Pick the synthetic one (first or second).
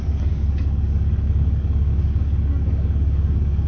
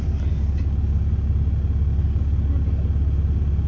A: first